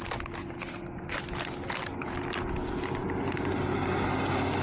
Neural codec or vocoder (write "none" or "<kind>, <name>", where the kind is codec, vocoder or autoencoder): none